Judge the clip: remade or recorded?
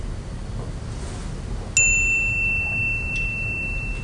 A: recorded